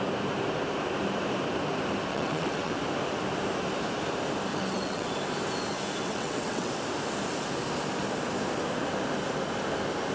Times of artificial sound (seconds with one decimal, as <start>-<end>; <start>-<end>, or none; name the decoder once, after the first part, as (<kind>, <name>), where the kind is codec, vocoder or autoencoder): 2.1-2.7 (vocoder, WaveNeXt); 4.5-5.1; 6.0-6.7